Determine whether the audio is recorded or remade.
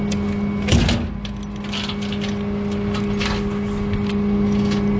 recorded